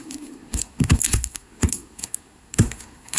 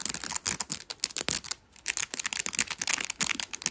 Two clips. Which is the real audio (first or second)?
second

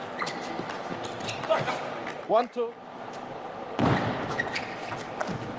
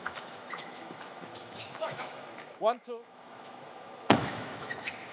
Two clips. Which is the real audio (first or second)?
first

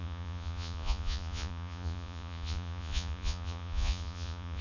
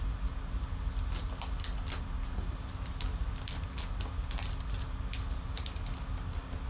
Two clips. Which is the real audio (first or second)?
second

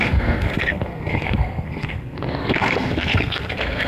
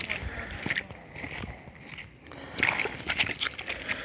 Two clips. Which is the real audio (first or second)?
second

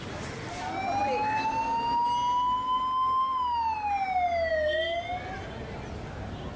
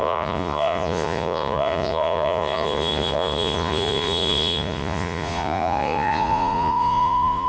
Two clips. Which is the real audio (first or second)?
first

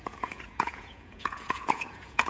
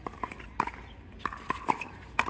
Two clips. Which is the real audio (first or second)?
second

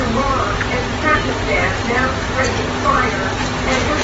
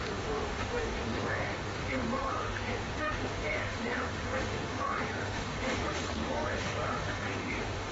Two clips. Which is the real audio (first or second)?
first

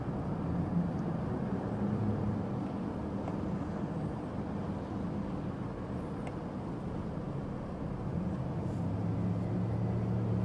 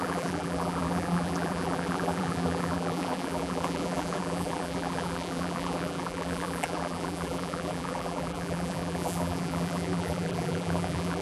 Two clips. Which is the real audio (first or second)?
first